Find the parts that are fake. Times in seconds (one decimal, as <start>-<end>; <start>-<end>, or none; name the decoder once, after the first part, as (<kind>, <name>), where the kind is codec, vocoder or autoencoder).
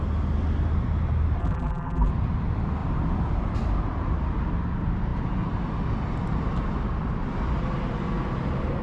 1.4-2.1 (vocoder, BigVGAN v2)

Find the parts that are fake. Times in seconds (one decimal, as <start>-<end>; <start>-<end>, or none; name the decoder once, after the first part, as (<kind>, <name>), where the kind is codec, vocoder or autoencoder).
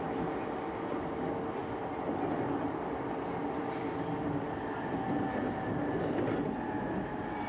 1.6-4.7 (vocoder, BigVGAN v2)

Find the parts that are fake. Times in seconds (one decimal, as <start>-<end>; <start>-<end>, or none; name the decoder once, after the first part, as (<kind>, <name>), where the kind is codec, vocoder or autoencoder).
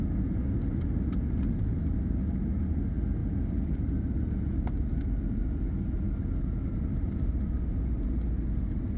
none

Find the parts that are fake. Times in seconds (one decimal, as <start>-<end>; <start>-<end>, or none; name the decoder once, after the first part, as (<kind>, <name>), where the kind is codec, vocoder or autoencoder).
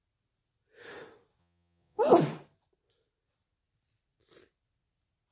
1.4-2.0 (vocoder, Vocos)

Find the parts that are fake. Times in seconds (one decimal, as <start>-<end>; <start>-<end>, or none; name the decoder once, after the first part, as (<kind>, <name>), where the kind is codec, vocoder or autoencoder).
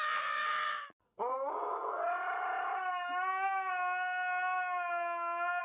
0.0-1.8 (vocoder, Vocos)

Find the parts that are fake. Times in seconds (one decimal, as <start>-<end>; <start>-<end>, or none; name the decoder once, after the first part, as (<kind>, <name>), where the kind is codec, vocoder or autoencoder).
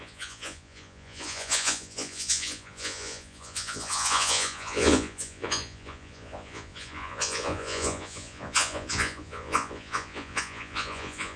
0.0-11.4 (vocoder, Vocos)